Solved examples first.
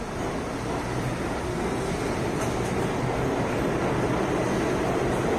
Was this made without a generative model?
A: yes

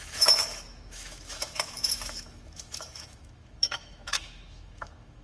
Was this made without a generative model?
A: no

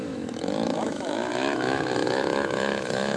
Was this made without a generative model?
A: no